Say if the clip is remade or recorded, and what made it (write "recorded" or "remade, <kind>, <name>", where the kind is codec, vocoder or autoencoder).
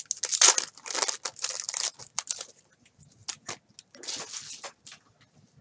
recorded